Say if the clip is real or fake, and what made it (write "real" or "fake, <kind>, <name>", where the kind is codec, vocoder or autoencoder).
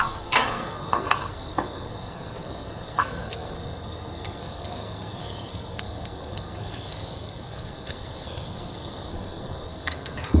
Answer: fake, codec, SNAC